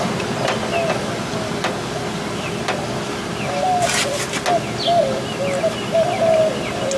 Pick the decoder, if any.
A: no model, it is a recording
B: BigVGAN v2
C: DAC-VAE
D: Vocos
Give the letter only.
A